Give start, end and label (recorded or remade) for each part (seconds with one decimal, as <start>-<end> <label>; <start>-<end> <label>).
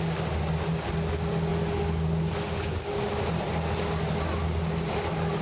0.0-5.4 recorded